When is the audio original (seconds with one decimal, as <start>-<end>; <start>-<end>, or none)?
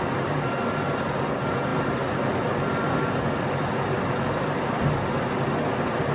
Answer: 0.0-6.1